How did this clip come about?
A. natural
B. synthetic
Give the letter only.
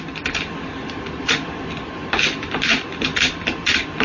A